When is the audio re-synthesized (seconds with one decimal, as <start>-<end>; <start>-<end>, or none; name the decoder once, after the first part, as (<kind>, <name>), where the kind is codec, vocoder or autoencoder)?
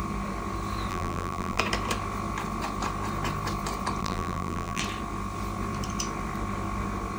0.9-1.6 (vocoder, BigVGAN v2); 4.0-4.8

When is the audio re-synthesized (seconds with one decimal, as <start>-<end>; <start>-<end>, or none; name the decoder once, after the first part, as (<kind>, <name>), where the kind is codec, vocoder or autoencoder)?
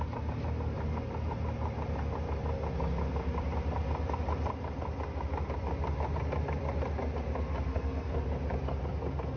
7.7-8.2 (codec, SNAC)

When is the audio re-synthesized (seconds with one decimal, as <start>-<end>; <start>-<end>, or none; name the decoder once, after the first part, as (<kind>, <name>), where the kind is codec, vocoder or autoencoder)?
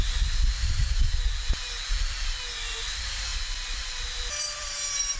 0.0-1.1 (vocoder, BigVGAN v2); 2.5-5.2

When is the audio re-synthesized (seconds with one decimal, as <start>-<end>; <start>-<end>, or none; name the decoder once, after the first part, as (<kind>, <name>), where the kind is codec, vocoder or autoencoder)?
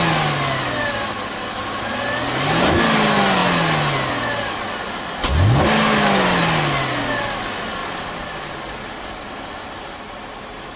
none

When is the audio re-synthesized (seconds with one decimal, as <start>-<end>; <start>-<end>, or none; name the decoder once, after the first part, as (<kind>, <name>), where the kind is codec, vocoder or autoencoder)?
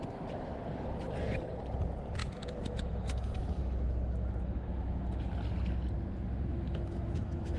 2.2-5.3 (autoencoder, DAC-VAE); 6.5-7.6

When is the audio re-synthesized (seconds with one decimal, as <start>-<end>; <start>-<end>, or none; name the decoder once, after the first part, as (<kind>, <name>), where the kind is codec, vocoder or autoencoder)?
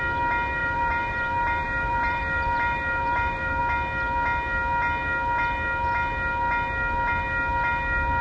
0.6-3.6 (vocoder, BigVGAN v2)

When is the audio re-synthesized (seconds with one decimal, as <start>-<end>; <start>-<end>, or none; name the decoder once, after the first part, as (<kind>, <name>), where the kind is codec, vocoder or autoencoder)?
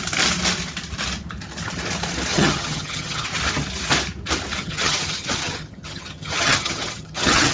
2.3-3.3 (vocoder, HiFi-GAN); 4.6-7.5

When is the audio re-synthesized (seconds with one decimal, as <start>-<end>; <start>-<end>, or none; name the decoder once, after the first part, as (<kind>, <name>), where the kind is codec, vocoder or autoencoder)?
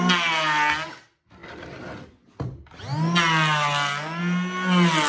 none